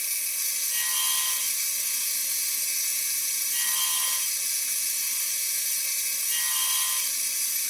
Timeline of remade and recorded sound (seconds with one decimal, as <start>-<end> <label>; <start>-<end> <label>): 0.0-2.2 recorded; 2.2-4.2 remade; 4.2-7.7 recorded